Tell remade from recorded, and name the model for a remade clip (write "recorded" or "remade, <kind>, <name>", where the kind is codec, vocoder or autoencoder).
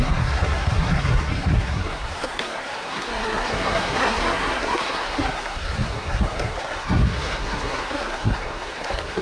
remade, codec, SNAC